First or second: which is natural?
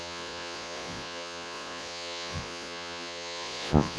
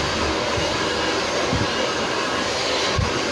second